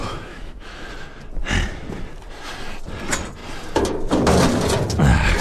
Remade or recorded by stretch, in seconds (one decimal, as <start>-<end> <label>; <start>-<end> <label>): 0.0-0.9 remade; 0.9-5.4 recorded